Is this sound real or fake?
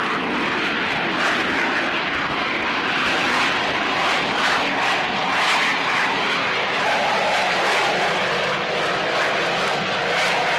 real